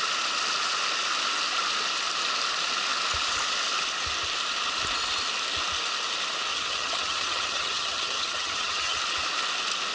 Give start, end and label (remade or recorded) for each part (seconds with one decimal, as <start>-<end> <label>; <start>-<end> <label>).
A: 0.0-6.5 recorded; 6.5-9.0 remade; 9.0-9.9 recorded